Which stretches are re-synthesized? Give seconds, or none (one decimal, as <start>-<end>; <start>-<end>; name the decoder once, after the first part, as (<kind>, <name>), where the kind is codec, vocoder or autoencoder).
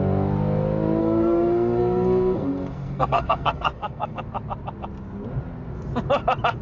1.0-4.2 (codec, SNAC)